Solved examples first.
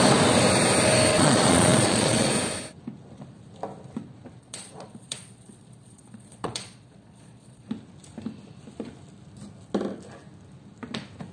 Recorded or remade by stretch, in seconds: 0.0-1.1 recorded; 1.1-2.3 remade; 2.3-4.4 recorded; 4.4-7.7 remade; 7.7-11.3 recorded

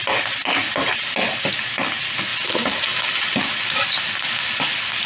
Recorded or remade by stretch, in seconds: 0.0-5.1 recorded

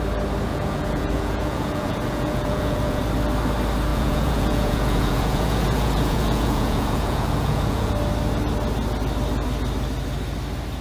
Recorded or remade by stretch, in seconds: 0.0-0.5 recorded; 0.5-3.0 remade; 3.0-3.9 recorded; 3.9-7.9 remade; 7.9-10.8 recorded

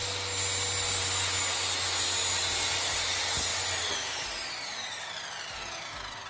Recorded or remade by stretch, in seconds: 0.0-6.3 recorded